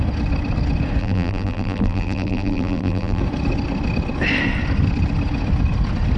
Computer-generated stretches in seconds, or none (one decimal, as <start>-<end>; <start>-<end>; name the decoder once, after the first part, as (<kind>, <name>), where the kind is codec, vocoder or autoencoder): 1.0-3.2 (vocoder, BigVGAN v2)